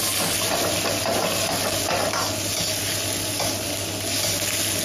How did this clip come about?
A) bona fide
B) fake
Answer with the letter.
A